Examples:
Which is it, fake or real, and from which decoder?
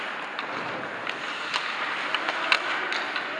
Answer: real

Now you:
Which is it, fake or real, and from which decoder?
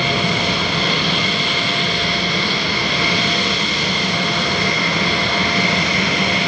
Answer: real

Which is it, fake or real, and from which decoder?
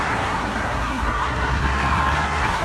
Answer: fake, codec, SNAC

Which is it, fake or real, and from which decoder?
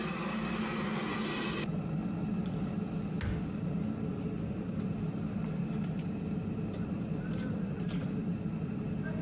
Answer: real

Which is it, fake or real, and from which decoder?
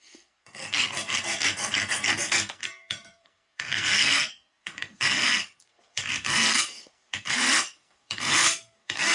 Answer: fake, codec, SNAC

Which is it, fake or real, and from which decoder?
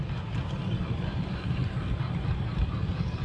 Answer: real